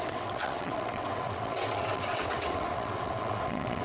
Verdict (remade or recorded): remade